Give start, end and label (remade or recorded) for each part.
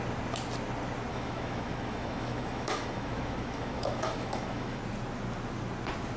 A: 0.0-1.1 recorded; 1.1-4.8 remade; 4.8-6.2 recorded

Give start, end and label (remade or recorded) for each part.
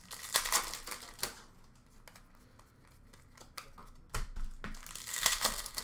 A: 0.0-5.1 recorded; 5.1-5.8 remade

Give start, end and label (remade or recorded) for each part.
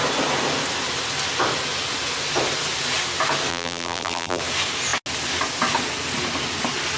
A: 0.0-3.5 recorded; 3.5-4.4 remade; 4.4-7.0 recorded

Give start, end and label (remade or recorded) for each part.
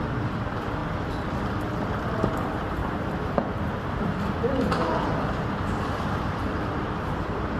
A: 0.0-0.8 recorded; 0.8-1.6 remade; 1.6-2.8 recorded; 2.8-7.6 remade